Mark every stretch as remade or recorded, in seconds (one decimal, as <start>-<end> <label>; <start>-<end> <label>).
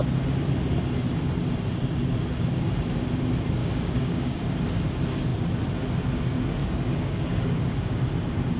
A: 0.0-3.6 recorded; 3.6-4.4 remade; 4.4-6.6 recorded; 6.6-8.0 remade; 8.0-8.6 recorded